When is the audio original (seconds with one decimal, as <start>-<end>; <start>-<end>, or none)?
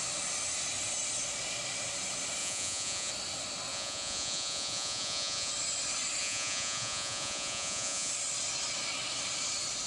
0.0-2.4; 3.1-3.7; 5.5-6.2; 8.1-9.9